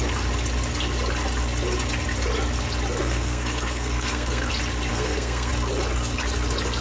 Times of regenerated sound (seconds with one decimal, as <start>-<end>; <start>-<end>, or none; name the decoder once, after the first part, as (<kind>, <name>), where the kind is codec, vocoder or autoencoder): 3.0-4.5 (codec, SNAC); 4.9-5.5